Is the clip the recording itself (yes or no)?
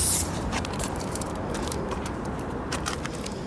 no